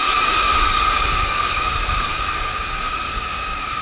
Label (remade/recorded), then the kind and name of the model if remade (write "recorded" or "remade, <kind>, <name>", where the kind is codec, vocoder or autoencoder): remade, codec, DAC